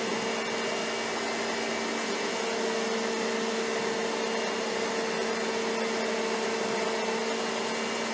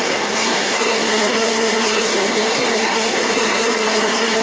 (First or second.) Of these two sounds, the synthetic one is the second